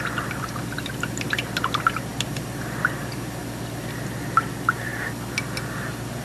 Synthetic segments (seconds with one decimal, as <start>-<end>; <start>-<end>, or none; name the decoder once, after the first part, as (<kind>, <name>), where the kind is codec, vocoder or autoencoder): none